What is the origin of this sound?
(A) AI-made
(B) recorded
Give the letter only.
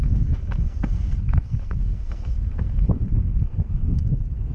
A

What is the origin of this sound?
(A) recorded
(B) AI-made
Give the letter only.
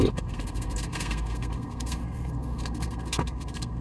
B